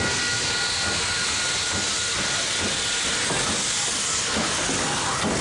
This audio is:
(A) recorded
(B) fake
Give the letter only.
A